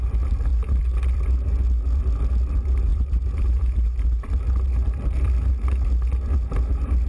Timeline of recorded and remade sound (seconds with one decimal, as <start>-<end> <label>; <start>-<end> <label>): 0.0-2.9 recorded; 2.9-4.3 remade; 4.3-7.1 recorded